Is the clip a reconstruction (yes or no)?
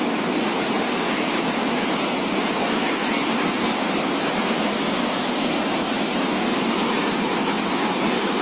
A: no